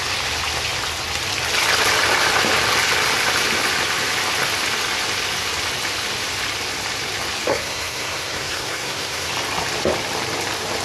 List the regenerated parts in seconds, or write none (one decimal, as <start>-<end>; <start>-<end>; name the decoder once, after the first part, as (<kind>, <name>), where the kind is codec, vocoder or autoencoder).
7.5-9.3 (codec, SNAC)